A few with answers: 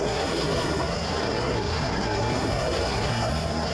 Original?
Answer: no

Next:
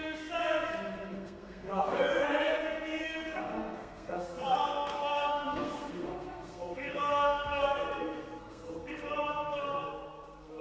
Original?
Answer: no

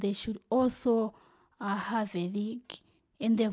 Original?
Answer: yes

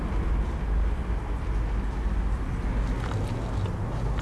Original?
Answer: yes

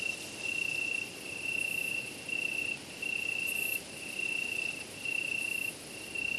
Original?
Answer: yes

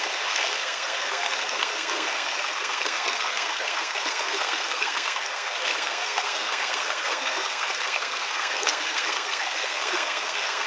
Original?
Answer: no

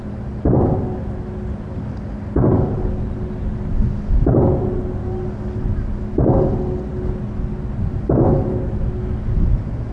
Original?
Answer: yes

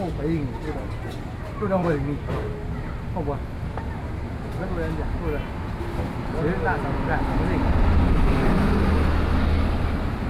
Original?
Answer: yes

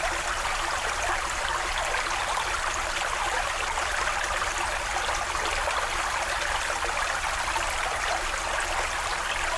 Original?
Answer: yes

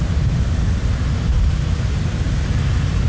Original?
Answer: yes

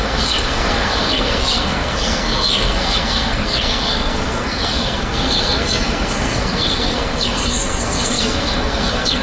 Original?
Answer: no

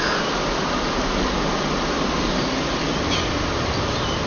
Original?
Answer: yes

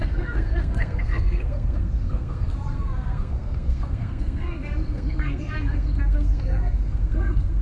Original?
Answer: no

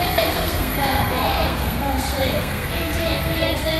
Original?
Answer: no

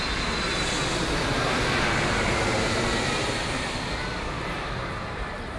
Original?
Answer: yes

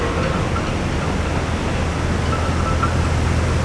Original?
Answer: yes